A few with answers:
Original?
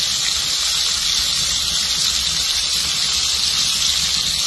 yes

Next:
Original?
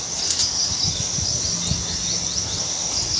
yes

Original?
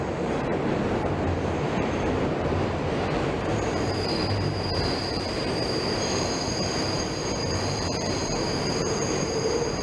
no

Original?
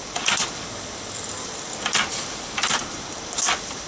yes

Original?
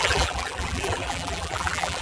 no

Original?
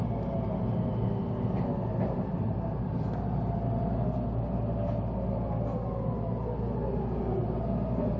yes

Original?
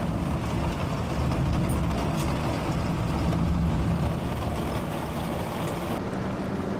yes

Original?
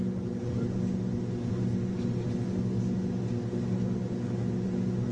yes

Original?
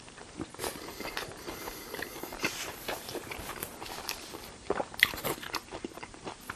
no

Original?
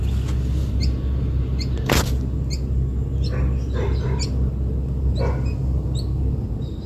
yes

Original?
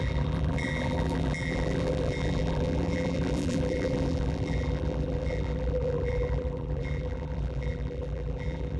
no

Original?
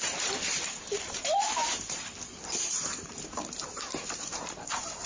no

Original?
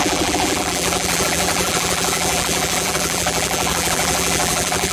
no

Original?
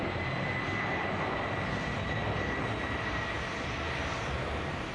yes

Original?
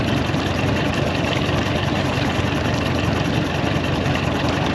yes